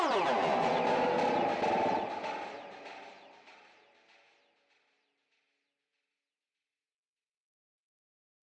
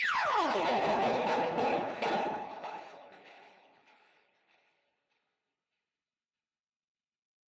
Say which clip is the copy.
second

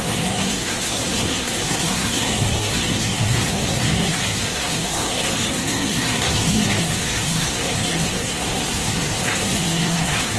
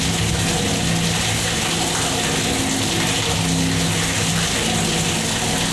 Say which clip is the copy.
first